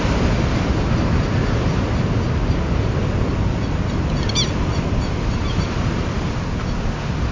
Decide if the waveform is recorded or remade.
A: recorded